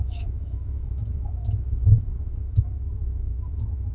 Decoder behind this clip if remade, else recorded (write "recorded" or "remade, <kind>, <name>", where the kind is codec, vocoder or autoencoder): remade, autoencoder, DAC-VAE